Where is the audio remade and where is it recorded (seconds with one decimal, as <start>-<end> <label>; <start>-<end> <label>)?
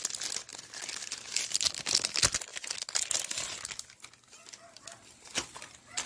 0.0-6.1 recorded